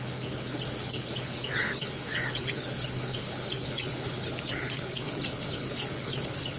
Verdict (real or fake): fake